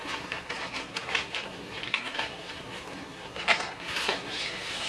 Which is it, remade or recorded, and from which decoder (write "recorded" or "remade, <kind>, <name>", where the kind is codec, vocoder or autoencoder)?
remade, codec, SNAC